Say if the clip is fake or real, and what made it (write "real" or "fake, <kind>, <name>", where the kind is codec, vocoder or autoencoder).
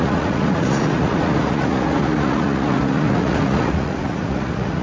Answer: fake, vocoder, Vocos